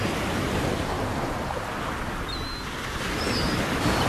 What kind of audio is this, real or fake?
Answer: real